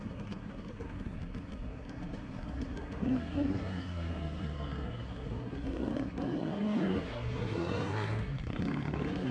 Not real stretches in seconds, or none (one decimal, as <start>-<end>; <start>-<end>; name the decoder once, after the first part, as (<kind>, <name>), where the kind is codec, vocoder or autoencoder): 0.0-9.3 (codec, SNAC)